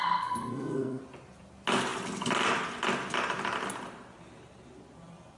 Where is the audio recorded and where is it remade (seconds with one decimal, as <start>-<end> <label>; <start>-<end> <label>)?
0.0-1.0 remade; 1.0-5.4 recorded